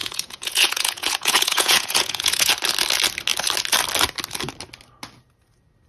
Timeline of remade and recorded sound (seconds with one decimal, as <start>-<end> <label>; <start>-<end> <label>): 0.0-2.5 remade; 2.5-5.9 recorded

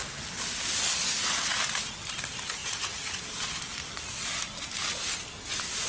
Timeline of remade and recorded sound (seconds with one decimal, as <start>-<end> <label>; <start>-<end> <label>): 0.0-2.6 recorded; 2.6-3.2 remade; 3.2-5.9 recorded

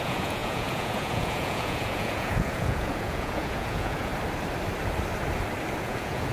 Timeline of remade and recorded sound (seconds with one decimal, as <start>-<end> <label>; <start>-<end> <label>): 0.0-4.1 remade; 4.1-5.8 recorded; 5.8-6.3 remade

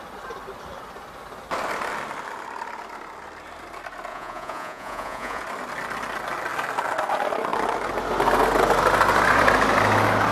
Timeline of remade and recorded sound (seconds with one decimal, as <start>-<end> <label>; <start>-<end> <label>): 0.0-4.1 recorded; 4.1-5.4 remade; 5.4-10.3 recorded

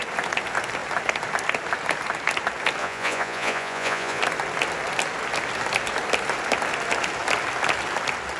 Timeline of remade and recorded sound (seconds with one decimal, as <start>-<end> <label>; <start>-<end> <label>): 0.0-2.8 recorded; 2.8-4.2 remade; 4.2-8.4 recorded

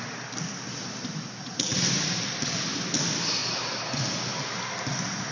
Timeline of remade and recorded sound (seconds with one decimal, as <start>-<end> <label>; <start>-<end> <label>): 0.0-5.3 recorded